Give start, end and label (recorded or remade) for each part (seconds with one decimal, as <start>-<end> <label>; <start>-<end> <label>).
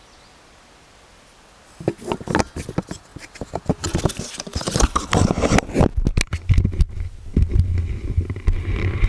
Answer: 0.0-9.1 recorded